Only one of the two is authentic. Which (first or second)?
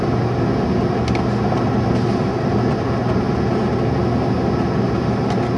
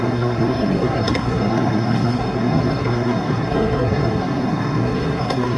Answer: first